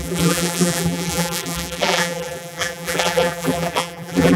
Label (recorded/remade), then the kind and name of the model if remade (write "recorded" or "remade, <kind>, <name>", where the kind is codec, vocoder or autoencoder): remade, vocoder, BigVGAN v2